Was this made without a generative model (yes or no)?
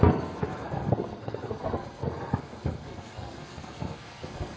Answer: no